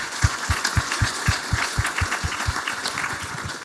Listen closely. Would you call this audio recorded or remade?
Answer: remade